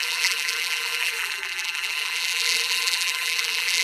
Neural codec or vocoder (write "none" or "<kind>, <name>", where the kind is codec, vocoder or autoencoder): vocoder, BigVGAN v2